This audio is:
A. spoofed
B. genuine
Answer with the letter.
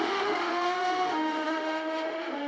A